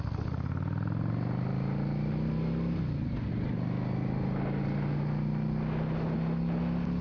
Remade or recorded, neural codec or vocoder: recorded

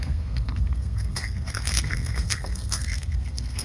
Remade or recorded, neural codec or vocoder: remade, codec, SNAC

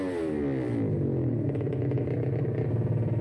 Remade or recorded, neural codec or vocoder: remade, vocoder, BigVGAN v2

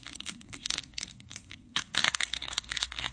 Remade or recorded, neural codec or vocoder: remade, codec, SNAC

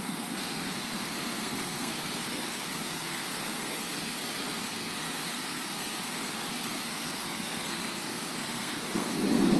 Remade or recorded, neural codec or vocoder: remade, codec, SNAC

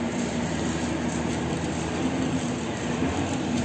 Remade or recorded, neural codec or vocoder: remade, vocoder, BigVGAN v2